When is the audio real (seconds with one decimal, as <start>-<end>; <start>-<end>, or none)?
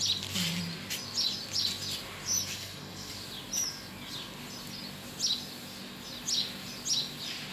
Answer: 0.0-2.5; 3.1-7.5